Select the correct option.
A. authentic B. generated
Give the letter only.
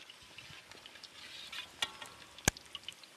A